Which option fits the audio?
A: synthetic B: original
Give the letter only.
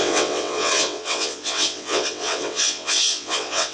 A